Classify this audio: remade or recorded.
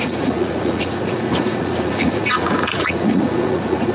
remade